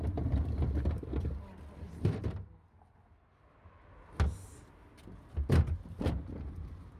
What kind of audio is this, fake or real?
real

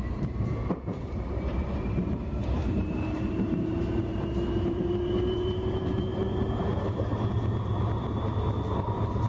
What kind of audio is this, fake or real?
fake